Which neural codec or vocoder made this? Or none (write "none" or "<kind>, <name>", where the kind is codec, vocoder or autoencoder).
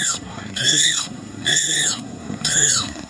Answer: codec, SNAC